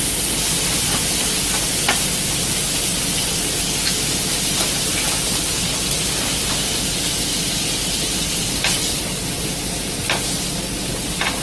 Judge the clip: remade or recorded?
recorded